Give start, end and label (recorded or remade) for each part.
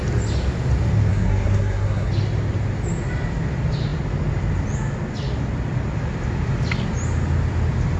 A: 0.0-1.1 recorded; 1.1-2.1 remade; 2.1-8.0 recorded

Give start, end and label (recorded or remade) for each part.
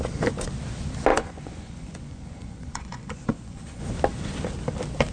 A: 0.0-1.1 recorded; 1.1-3.8 remade; 3.8-5.1 recorded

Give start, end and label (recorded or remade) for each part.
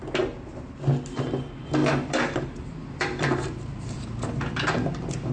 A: 0.0-1.8 recorded; 1.8-5.3 remade